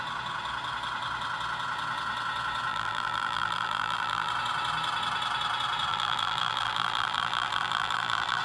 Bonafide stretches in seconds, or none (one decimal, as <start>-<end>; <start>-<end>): 0.0-2.7; 4.3-5.9